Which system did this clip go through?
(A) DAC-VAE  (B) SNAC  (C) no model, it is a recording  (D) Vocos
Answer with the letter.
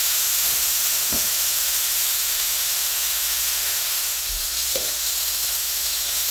A